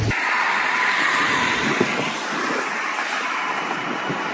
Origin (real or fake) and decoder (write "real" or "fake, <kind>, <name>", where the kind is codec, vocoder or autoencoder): fake, vocoder, BigVGAN v2